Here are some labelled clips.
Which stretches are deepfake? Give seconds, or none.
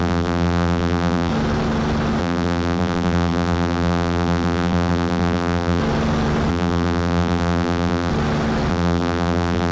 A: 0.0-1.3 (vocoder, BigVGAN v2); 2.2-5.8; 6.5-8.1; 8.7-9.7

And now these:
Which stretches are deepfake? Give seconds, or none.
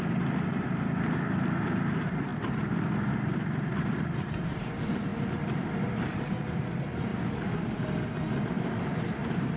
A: 0.0-2.3 (vocoder, BigVGAN v2); 3.1-7.1; 8.4-9.6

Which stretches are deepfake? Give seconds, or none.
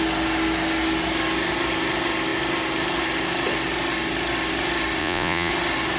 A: 5.0-5.5 (vocoder, Vocos)